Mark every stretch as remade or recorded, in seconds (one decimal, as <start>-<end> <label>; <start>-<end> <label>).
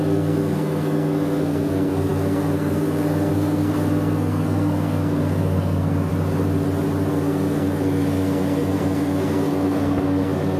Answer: 0.0-6.1 remade; 6.1-7.1 recorded; 7.1-10.6 remade